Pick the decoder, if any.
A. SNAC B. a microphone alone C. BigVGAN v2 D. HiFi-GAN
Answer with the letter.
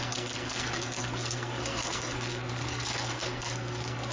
A